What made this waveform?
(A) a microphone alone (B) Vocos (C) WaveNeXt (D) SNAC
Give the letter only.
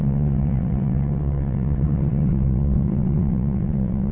C